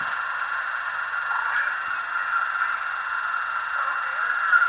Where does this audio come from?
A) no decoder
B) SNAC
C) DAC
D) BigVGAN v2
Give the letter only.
A